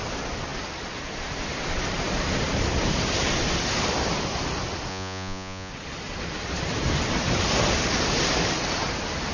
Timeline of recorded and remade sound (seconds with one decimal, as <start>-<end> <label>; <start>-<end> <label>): 0.0-4.9 recorded; 4.9-5.7 remade; 5.7-9.3 recorded